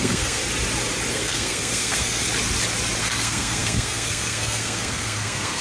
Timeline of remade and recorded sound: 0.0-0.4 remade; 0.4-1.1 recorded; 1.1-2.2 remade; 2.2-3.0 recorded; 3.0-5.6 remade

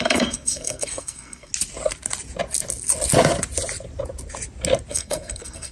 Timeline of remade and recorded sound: 0.0-1.5 remade; 1.5-4.9 recorded; 4.9-5.7 remade

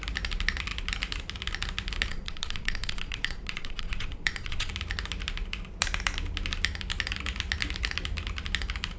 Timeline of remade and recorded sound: 0.0-2.1 recorded; 2.1-4.7 remade; 4.7-9.0 recorded